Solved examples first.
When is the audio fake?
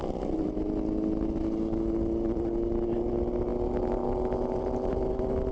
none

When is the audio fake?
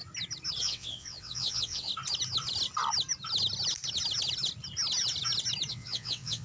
0.6-1.9 (vocoder, WaveNeXt); 5.7-6.4